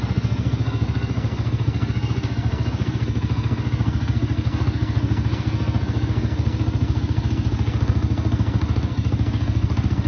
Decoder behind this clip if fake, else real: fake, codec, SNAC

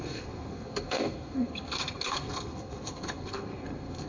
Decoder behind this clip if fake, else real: fake, codec, SNAC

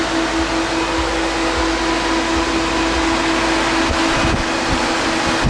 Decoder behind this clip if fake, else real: real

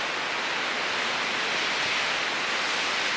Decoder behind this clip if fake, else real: real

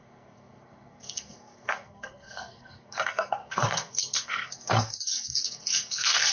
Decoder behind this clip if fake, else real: fake, codec, SNAC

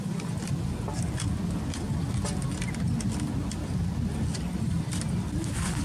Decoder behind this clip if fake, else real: real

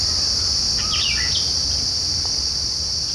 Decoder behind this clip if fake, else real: real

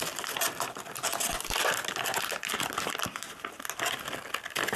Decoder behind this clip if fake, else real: real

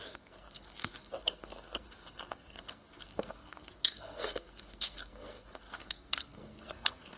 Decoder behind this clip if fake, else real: fake, codec, SNAC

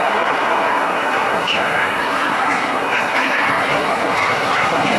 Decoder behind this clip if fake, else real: fake, codec, SNAC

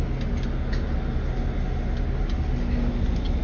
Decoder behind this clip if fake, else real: real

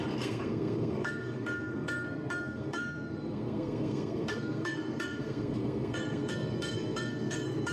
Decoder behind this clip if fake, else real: fake, codec, SNAC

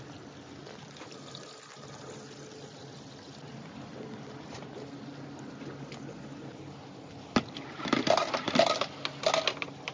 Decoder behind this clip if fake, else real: real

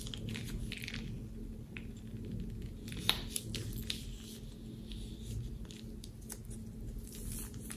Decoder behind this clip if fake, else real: real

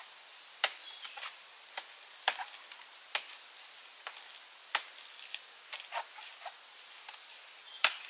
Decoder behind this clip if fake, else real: real